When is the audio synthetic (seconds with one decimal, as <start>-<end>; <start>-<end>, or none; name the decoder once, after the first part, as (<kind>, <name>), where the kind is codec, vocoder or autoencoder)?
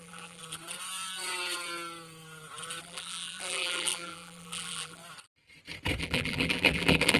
0.0-0.4 (vocoder, BigVGAN v2); 2.8-5.0; 6.0-7.2